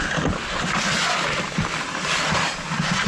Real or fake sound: real